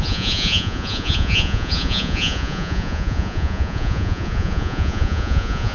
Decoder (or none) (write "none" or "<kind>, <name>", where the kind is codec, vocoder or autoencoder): vocoder, Vocos